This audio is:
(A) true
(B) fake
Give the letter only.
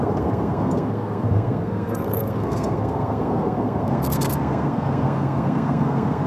B